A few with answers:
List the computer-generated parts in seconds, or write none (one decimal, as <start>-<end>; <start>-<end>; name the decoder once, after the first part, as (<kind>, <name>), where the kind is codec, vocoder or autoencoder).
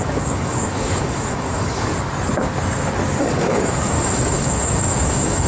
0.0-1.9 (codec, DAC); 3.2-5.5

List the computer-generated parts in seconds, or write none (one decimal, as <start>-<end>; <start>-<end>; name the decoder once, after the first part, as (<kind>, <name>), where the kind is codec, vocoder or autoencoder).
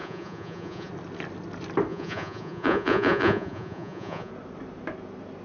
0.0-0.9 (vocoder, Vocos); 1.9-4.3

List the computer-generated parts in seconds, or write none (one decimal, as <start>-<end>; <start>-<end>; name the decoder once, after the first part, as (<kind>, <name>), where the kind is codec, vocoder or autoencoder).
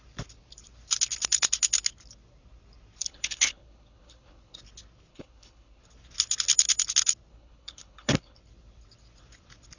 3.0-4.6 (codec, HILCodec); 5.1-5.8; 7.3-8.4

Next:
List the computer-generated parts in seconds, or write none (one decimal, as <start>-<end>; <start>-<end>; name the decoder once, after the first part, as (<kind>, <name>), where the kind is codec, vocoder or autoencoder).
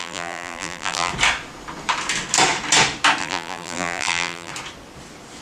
0.0-1.1 (vocoder, BigVGAN v2); 3.2-4.5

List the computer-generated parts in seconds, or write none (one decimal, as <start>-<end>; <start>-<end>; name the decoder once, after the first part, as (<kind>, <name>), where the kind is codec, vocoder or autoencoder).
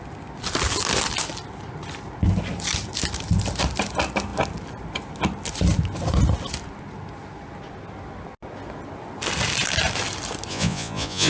10.5-11.3 (vocoder, Vocos)